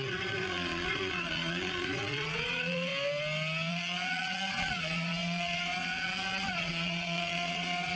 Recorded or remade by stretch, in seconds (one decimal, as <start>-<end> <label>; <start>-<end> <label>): 0.0-2.9 remade; 2.9-3.7 recorded; 3.7-8.0 remade